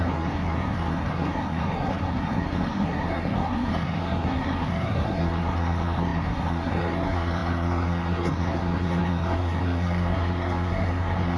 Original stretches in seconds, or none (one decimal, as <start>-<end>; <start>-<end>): none